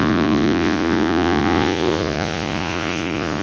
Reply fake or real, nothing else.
fake